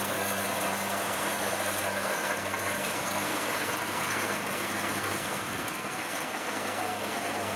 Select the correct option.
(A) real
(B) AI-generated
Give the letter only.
B